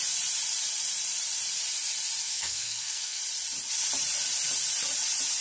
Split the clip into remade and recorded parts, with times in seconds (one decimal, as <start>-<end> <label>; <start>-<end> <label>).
0.0-2.2 recorded; 2.2-3.2 remade; 3.2-5.4 recorded